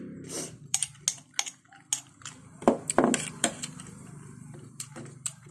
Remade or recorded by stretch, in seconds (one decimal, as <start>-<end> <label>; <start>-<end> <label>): 0.0-0.9 remade; 0.9-3.3 recorded; 3.3-5.5 remade